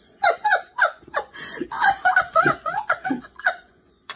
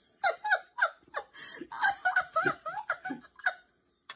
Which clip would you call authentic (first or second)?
second